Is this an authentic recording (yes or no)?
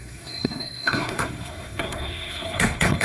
no